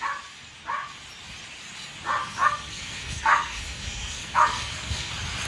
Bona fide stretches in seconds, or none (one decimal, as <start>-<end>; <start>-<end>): 0.0-2.2; 5.1-5.5